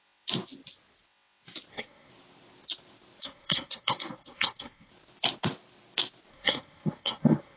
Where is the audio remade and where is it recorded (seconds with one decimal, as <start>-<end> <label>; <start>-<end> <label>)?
0.0-1.7 recorded; 1.7-2.1 remade; 2.1-3.2 recorded; 3.2-4.9 remade; 4.9-6.3 recorded; 6.3-7.6 remade